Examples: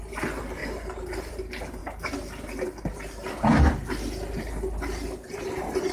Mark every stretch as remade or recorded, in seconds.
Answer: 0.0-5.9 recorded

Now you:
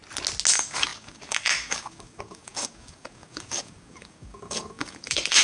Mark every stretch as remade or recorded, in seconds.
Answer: 0.0-0.5 recorded; 0.5-5.4 remade

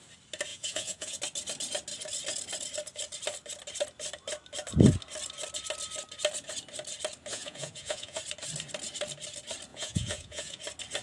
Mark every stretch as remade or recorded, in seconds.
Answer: 0.0-0.5 recorded; 0.5-1.2 remade; 1.2-7.3 recorded; 7.3-8.2 remade; 8.2-9.7 recorded; 9.7-10.6 remade; 10.6-11.0 recorded

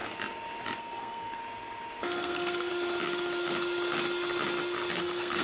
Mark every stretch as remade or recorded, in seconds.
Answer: 0.0-0.8 recorded; 0.8-1.4 remade; 1.4-2.0 recorded; 2.0-2.7 remade; 2.7-5.0 recorded; 5.0-5.4 remade

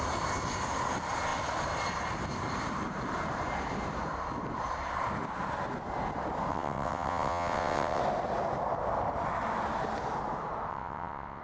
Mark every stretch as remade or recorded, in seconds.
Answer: 0.0-6.5 recorded; 6.5-8.0 remade; 8.0-10.7 recorded; 10.7-11.4 remade

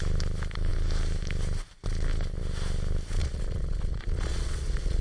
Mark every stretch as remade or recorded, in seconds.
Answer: 0.0-3.2 recorded; 3.2-5.0 remade

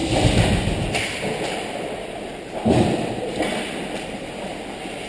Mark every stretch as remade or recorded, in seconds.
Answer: 0.0-5.1 recorded

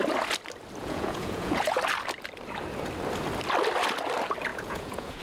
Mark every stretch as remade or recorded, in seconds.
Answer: 0.0-0.8 recorded; 0.8-1.8 remade; 1.8-4.5 recorded; 4.5-5.2 remade